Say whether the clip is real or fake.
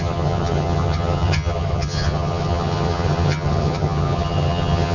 fake